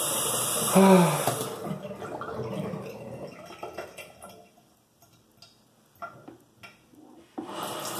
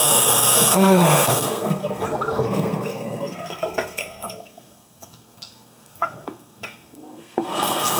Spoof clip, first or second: second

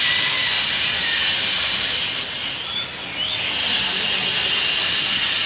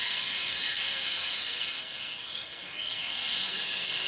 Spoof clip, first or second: second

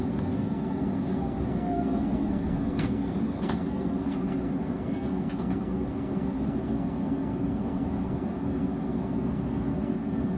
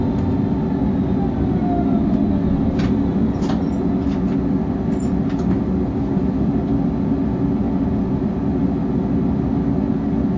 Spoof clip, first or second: first